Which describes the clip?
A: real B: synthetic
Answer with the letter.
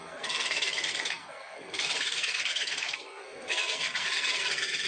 B